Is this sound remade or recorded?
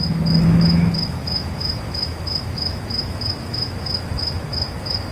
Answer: remade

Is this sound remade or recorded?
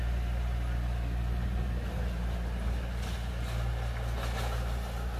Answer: recorded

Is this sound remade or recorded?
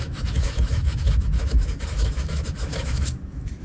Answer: remade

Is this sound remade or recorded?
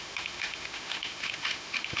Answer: remade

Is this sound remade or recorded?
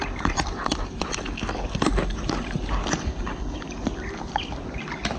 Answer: recorded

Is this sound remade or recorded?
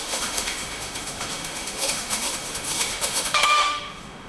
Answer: remade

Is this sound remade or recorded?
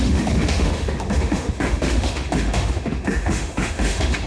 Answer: remade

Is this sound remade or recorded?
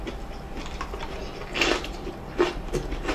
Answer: recorded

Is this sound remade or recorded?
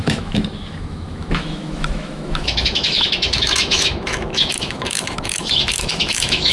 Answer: remade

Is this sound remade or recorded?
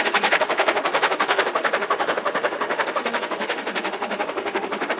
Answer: remade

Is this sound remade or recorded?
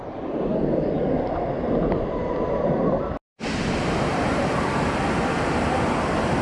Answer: recorded